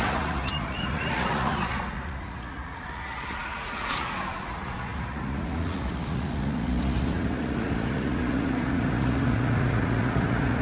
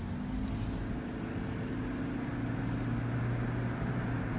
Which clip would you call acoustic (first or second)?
second